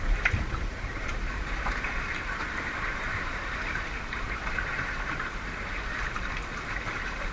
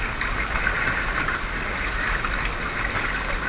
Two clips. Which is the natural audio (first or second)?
second